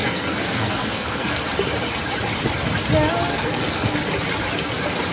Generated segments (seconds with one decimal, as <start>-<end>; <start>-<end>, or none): 0.0-1.4; 3.3-3.9